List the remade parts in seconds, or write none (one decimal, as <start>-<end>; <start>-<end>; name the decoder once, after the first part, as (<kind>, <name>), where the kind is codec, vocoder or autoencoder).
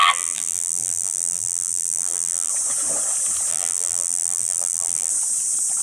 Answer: 0.0-2.5 (vocoder, BigVGAN v2); 3.5-5.1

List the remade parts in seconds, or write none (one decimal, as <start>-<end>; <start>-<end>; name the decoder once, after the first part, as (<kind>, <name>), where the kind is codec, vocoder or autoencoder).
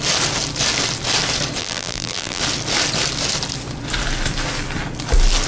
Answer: 1.6-2.4 (vocoder, BigVGAN v2)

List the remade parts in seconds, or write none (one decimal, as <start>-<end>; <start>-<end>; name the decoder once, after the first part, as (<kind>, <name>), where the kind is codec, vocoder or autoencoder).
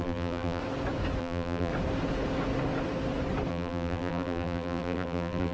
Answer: 0.0-0.6 (vocoder, BigVGAN v2); 1.2-1.7; 3.5-5.5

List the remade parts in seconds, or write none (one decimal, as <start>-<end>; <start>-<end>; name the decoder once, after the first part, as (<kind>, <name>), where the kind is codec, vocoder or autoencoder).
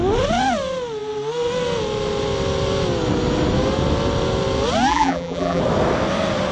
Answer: 4.9-5.6 (vocoder, BigVGAN v2)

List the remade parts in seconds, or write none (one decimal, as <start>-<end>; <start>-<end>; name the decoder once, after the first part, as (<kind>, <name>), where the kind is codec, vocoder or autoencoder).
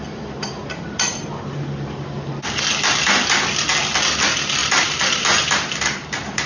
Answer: 4.6-6.5 (vocoder, BigVGAN v2)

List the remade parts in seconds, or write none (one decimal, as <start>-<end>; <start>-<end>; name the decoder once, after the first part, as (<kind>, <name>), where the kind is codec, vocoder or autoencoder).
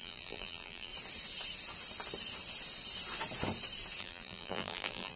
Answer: 0.0-0.9 (vocoder, BigVGAN v2); 4.0-5.2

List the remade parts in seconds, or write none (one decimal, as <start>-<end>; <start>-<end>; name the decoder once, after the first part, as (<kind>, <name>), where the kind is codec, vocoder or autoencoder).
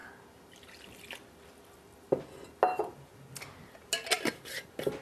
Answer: none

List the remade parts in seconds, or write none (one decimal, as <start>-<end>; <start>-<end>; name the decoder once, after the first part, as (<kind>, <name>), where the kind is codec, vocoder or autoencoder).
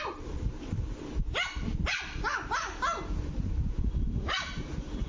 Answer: 0.0-1.9 (vocoder, BigVGAN v2); 3.2-5.1